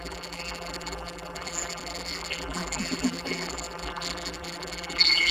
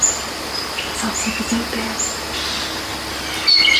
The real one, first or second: second